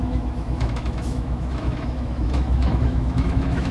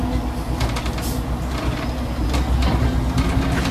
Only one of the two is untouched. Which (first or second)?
second